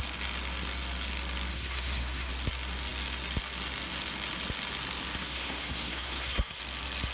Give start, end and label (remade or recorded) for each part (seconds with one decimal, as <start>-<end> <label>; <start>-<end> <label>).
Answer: 0.0-1.5 recorded; 1.5-2.3 remade; 2.3-5.2 recorded; 5.2-6.6 remade; 6.6-7.1 recorded